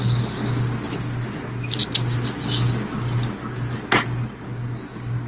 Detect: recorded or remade recorded